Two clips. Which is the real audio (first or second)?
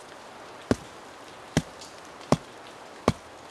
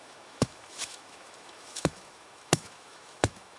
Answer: first